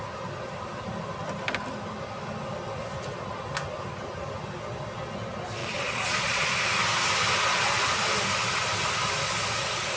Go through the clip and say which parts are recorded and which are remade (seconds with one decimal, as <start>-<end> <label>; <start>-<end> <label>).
0.0-5.6 recorded; 5.6-6.5 remade; 6.5-10.0 recorded